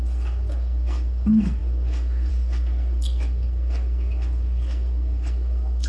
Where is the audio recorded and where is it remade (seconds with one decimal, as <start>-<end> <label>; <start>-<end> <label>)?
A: 0.0-5.9 remade